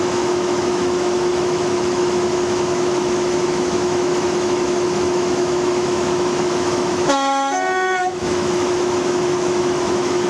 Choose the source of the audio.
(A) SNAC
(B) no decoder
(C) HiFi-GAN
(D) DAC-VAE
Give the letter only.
D